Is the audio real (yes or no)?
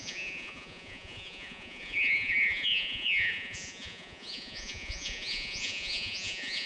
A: no